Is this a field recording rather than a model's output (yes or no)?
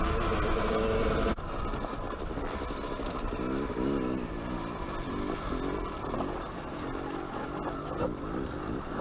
yes